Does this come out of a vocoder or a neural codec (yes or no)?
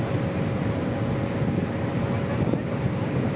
no